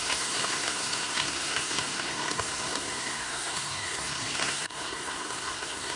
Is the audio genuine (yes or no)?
no